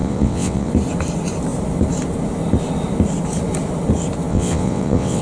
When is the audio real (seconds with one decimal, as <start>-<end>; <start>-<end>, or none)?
0.7-4.3